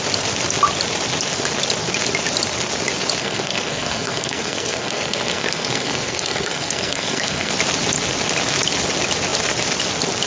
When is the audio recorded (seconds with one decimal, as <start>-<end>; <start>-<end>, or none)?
0.0-3.2; 7.5-10.3